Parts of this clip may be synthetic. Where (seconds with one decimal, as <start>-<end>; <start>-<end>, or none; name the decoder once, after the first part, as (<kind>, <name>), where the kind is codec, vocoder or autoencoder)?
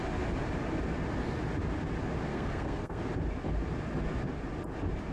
2.3-3.0 (codec, SNAC)